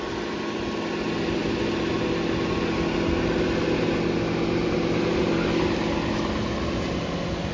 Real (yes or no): yes